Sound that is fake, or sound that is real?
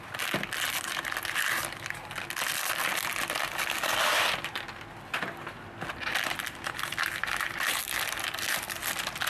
real